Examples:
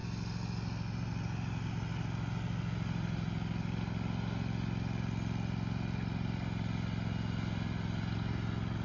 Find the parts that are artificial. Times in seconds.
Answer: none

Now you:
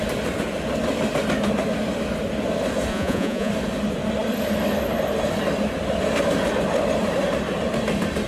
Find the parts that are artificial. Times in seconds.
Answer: 2.9-3.5

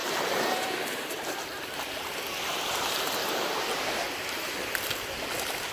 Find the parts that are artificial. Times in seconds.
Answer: 0.0-1.3; 3.2-4.5

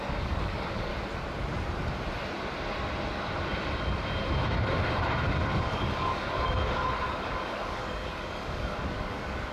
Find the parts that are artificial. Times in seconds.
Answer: 0.0-0.9; 5.5-9.5

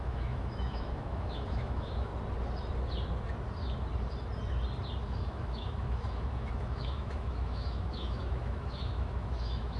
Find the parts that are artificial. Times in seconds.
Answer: 0.0-2.1; 5.0-9.8

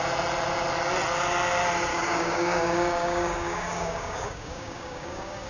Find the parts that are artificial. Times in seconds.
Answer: 1.9-5.5

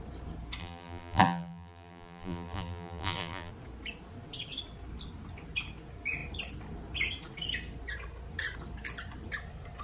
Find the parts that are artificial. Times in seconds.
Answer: 0.6-3.5